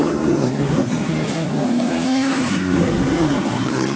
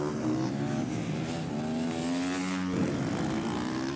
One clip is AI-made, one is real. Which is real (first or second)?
second